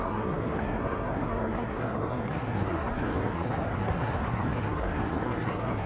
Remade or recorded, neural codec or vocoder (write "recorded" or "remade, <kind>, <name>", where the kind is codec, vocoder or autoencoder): remade, codec, SNAC